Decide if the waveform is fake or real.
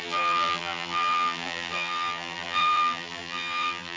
fake